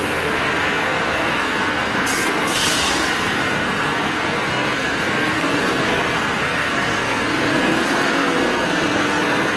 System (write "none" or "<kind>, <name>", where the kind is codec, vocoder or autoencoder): codec, SNAC